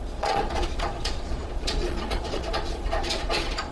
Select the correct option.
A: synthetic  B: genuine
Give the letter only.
A